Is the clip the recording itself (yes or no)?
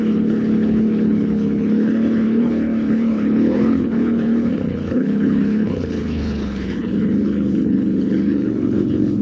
no